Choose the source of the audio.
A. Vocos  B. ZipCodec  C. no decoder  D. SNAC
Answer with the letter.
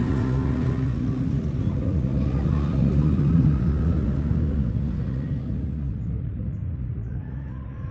A